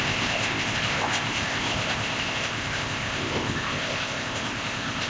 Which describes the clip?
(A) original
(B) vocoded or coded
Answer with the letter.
B